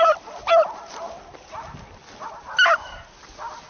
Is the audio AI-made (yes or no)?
no